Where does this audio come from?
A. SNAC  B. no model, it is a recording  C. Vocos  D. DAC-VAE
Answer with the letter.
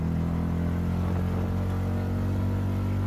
B